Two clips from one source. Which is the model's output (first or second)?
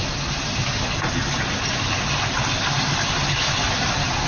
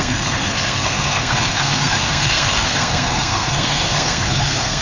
second